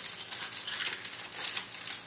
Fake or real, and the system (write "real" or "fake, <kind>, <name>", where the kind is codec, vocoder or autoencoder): real